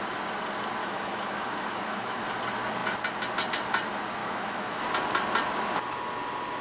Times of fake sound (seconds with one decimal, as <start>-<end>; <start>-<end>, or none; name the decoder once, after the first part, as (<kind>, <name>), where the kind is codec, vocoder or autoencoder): 0.8-2.2 (autoencoder, DAC-VAE); 4.2-4.8